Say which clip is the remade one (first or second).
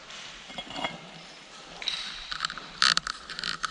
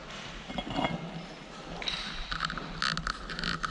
first